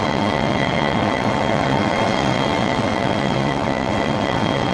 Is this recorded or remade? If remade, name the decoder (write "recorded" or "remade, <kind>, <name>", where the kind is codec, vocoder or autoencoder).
remade, vocoder, WaveNeXt